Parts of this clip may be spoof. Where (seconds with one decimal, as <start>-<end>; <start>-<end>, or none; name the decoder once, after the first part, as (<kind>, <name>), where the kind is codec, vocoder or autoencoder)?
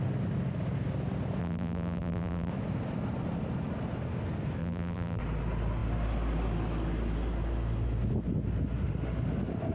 1.4-2.5 (vocoder, BigVGAN v2); 4.6-5.2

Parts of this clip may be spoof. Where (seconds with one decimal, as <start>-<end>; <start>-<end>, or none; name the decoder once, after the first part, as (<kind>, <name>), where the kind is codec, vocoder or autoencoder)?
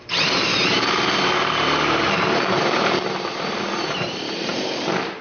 0.0-5.2 (vocoder, BigVGAN v2)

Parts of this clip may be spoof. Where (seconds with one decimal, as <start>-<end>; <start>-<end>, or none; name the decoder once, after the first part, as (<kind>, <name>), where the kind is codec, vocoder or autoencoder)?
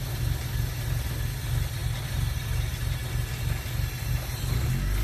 none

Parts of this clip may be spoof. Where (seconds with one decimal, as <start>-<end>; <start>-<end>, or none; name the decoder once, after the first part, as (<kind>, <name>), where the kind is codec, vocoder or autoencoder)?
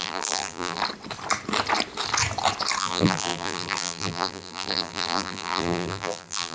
0.0-0.8 (vocoder, BigVGAN v2); 2.8-6.5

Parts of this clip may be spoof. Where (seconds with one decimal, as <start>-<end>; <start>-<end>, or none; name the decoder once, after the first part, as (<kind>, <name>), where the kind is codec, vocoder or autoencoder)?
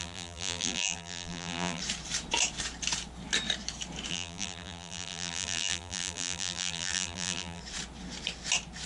0.0-1.8 (vocoder, BigVGAN v2); 4.1-7.6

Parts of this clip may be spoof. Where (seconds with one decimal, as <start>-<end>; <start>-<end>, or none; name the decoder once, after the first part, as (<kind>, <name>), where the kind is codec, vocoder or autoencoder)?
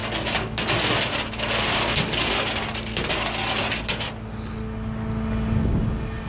none